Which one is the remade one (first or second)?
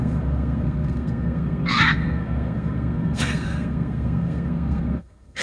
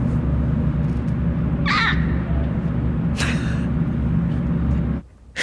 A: first